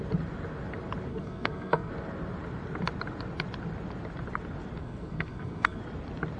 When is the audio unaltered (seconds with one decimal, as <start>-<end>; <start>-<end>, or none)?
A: 0.0-1.1; 1.9-4.8; 5.8-6.4